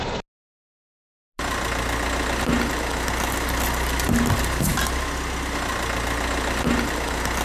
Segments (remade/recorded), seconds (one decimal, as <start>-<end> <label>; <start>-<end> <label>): 0.0-7.4 recorded

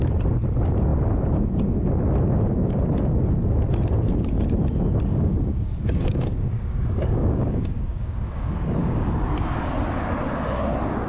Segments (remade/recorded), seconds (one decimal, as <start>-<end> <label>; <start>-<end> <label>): 0.0-5.1 recorded; 5.1-9.1 remade; 9.1-11.1 recorded

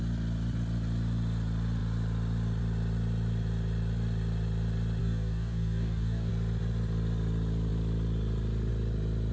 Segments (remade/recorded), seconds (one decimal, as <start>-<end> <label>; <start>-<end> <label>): 0.0-5.0 recorded; 5.0-6.3 remade; 6.3-9.3 recorded

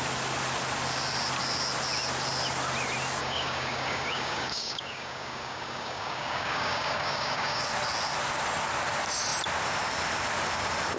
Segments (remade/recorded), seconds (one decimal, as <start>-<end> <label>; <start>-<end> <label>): 0.0-3.2 recorded; 3.2-7.6 remade; 7.6-11.0 recorded